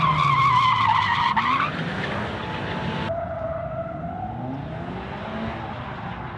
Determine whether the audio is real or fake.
real